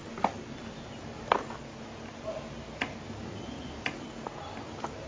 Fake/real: real